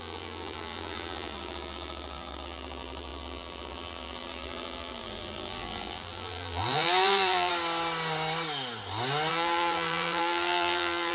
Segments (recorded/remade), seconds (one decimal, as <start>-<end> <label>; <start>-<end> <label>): 0.0-7.5 remade; 7.5-9.3 recorded; 9.3-11.1 remade